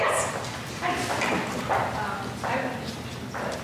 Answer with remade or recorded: recorded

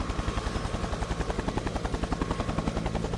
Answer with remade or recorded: recorded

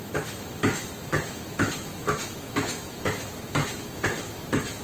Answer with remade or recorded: remade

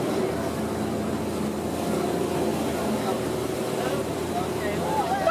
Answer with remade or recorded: recorded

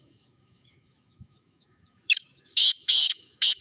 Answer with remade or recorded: remade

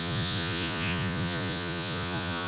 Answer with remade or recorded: remade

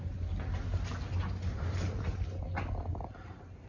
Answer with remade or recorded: recorded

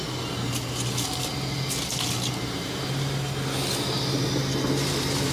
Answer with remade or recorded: recorded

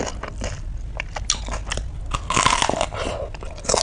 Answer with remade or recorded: recorded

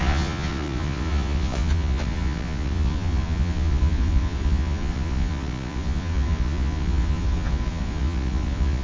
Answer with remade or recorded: remade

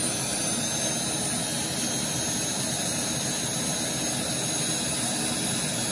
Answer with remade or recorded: recorded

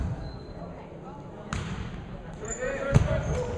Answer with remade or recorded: recorded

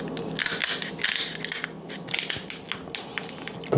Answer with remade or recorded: recorded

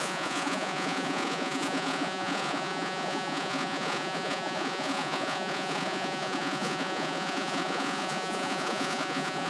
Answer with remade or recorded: remade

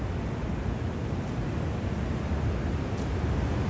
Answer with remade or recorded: recorded